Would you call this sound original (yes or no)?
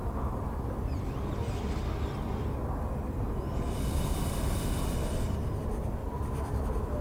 yes